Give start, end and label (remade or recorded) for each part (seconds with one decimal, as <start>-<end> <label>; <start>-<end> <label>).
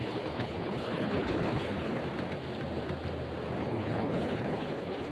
0.0-2.0 remade; 2.0-3.6 recorded; 3.6-5.1 remade